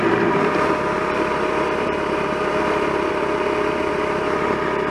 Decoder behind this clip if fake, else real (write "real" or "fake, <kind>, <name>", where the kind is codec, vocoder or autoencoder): fake, vocoder, BigVGAN v2